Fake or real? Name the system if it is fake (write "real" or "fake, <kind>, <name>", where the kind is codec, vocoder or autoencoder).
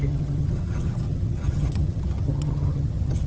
fake, vocoder, HiFi-GAN